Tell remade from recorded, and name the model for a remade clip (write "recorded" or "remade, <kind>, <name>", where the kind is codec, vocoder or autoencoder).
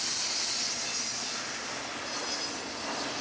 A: recorded